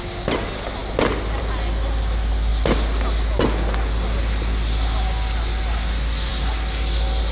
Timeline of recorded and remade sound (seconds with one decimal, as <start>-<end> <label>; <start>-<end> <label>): 0.0-7.3 recorded